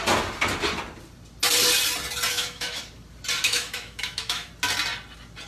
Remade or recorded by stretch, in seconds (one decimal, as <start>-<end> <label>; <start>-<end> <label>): 0.0-2.3 recorded; 2.3-2.8 remade; 2.8-3.4 recorded; 3.4-4.5 remade; 4.5-5.5 recorded